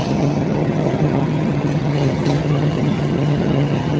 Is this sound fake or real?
fake